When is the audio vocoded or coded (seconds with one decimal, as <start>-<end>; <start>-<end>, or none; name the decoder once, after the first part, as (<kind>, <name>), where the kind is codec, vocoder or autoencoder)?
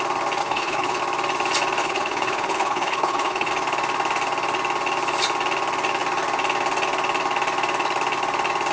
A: 0.4-1.0 (codec, HILCodec); 1.8-3.5